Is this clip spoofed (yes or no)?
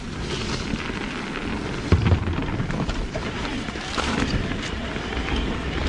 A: no